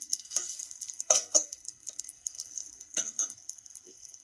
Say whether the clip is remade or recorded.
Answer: remade